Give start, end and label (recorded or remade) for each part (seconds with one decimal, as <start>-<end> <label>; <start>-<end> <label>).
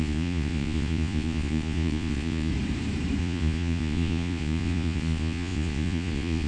0.0-2.5 remade; 2.5-3.2 recorded; 3.2-6.5 remade